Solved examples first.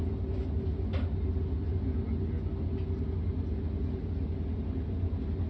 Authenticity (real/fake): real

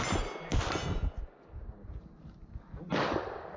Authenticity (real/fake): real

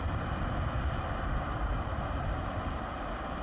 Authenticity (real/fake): fake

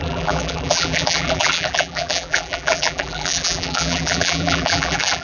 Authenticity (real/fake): fake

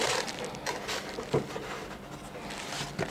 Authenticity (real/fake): real